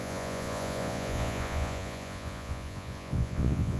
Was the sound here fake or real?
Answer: fake